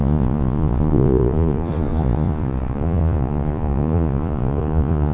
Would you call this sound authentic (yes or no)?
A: no